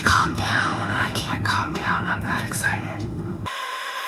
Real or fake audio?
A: fake